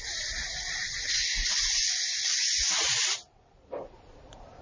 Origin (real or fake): fake